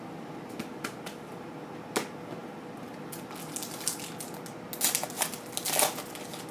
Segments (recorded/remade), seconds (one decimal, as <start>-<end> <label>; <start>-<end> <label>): 0.0-6.5 recorded